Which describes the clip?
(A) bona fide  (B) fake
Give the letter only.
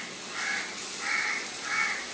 A